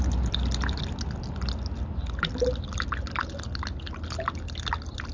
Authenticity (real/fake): real